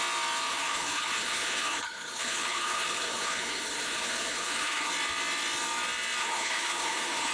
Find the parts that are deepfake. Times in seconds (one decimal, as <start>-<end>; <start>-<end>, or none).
0.5-4.9; 6.2-7.3